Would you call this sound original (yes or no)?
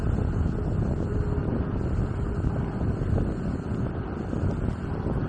yes